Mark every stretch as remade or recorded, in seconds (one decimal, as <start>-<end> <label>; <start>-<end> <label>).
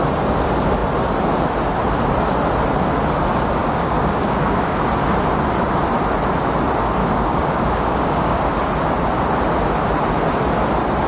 0.0-3.6 recorded; 3.6-4.7 remade; 4.7-7.0 recorded; 7.0-8.4 remade; 8.4-11.1 recorded